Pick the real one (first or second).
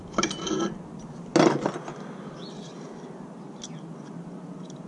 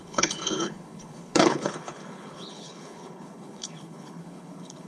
first